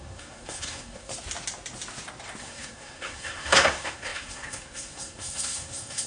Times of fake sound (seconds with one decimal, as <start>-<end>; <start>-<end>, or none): 0.0-1.1; 2.4-6.1